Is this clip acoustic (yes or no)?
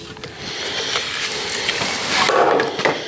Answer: yes